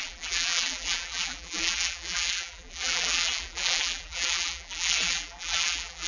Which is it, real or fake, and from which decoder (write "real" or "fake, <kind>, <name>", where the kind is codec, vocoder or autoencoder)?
fake, vocoder, BigVGAN v2